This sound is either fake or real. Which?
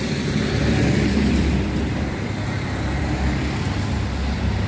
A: fake